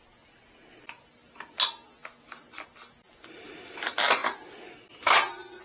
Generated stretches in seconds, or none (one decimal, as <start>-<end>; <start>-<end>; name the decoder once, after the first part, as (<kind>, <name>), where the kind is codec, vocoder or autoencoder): none